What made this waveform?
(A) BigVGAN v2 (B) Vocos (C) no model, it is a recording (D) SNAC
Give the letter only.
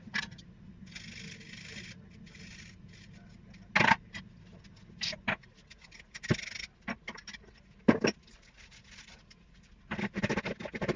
C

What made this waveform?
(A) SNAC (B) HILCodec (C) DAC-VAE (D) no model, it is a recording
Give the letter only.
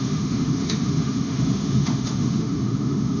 C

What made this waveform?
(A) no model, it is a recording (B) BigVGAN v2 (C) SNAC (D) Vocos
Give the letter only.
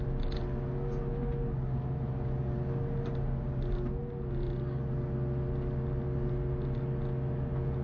A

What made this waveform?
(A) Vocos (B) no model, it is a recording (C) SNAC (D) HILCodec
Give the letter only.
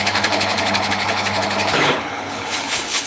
D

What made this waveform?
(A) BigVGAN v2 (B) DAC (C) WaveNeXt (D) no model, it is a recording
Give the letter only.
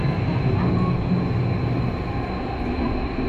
D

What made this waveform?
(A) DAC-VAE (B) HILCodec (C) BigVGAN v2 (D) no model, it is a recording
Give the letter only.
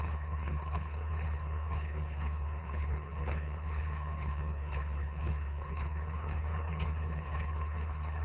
B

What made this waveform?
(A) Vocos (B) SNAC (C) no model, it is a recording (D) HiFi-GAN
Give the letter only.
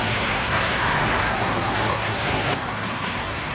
B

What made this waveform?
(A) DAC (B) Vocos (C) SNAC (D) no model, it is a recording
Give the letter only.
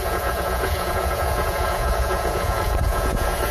B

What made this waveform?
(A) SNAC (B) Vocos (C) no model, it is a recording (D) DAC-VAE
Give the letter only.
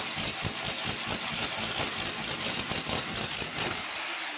C